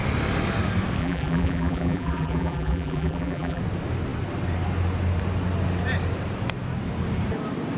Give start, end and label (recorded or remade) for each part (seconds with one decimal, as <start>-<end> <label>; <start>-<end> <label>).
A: 0.0-1.0 recorded; 1.0-3.6 remade; 3.6-7.8 recorded